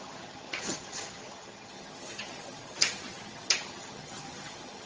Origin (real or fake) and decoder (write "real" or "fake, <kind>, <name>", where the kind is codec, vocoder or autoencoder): fake, vocoder, HiFi-GAN